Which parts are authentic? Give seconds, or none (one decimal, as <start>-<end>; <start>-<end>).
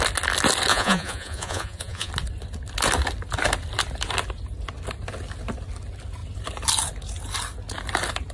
0.0-0.7; 2.1-8.3